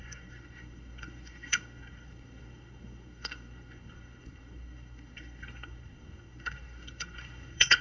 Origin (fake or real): fake